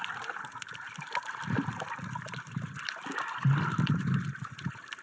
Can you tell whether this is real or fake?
real